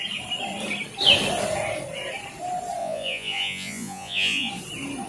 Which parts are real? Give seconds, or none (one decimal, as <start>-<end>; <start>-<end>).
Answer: 0.0-2.8; 4.5-5.1